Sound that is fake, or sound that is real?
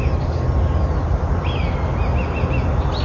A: real